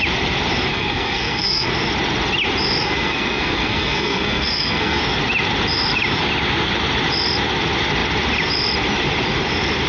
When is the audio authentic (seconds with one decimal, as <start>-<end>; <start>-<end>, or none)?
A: 0.0-0.7; 1.7-2.8; 5.0-9.9